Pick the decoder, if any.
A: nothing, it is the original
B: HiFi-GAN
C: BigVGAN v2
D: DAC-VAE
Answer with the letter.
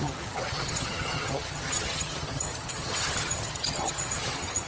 B